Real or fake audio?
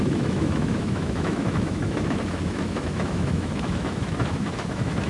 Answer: fake